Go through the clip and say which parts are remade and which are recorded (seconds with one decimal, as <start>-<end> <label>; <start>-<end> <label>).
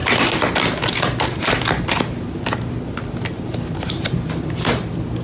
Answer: 0.0-5.2 recorded